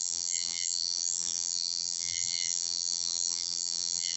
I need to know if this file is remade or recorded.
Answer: remade